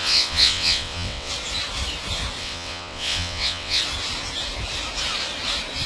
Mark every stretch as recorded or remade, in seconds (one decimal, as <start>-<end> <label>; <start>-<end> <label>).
0.0-1.3 remade; 1.3-2.4 recorded; 2.4-3.8 remade; 3.8-5.9 recorded